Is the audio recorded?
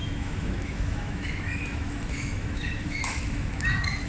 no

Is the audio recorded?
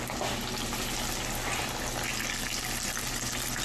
yes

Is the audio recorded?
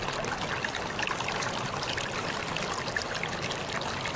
yes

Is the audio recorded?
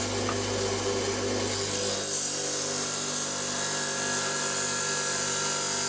yes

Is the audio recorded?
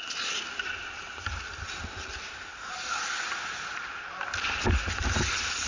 yes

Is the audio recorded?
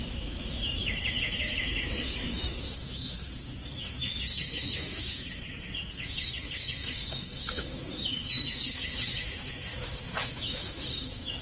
no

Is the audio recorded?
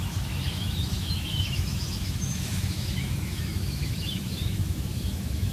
no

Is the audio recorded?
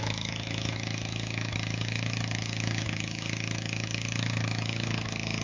no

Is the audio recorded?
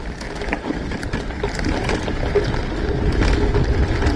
yes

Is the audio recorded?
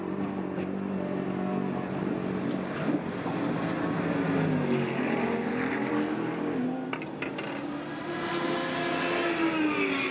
yes